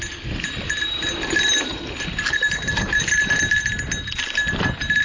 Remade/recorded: recorded